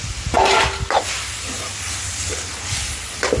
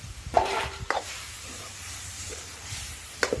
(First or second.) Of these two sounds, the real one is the first